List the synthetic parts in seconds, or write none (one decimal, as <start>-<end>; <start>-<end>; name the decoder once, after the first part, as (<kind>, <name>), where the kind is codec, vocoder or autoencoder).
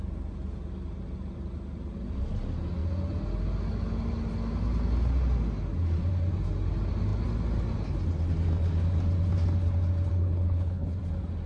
10.1-11.0 (codec, HILCodec)